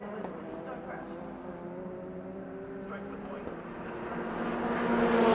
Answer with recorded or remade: recorded